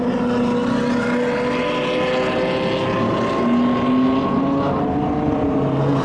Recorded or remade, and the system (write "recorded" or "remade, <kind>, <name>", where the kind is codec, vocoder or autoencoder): recorded